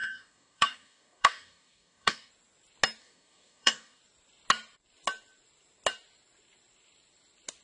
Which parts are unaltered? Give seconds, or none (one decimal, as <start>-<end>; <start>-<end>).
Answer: 2.3-3.0; 4.0-7.6